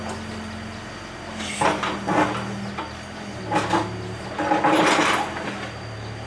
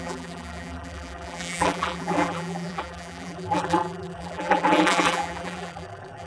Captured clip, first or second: first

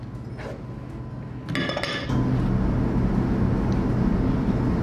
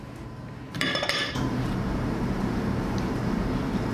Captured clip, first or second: first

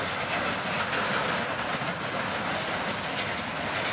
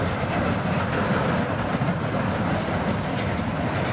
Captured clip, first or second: first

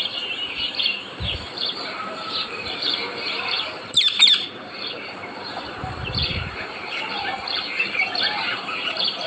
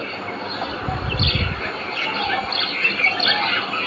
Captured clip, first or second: second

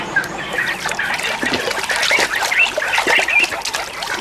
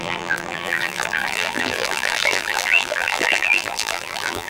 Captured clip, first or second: first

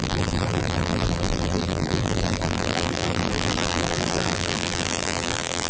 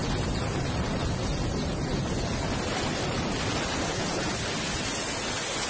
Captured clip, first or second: second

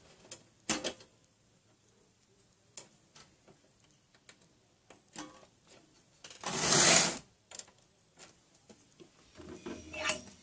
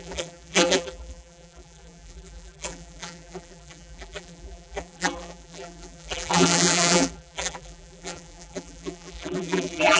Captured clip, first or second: first